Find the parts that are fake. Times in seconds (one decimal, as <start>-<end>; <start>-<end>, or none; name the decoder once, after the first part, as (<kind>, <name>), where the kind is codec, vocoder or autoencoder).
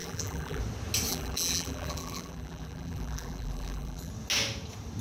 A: 0.0-0.6 (vocoder, BigVGAN v2); 1.1-4.1